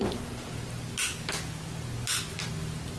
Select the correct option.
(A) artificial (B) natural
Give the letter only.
B